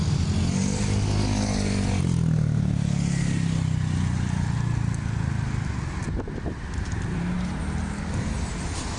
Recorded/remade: recorded